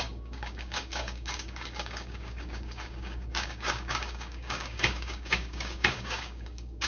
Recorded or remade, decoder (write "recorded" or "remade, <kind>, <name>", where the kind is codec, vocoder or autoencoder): remade, codec, DAC